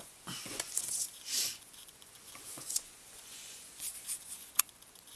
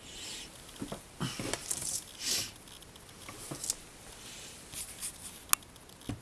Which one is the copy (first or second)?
first